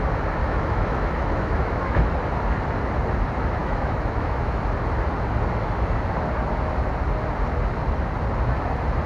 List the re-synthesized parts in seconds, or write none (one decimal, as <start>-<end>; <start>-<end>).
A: 0.4-2.0; 3.6-4.6